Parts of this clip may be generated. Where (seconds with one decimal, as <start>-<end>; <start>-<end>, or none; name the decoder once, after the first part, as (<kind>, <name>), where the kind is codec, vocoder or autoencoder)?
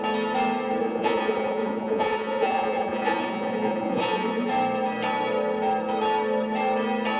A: 0.8-4.5 (vocoder, Vocos)